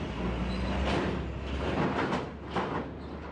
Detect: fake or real real